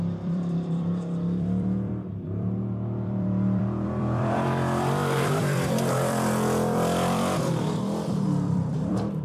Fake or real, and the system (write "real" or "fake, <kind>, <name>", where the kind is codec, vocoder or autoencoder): fake, vocoder, BigVGAN v2